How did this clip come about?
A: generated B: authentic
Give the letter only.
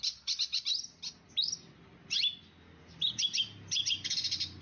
B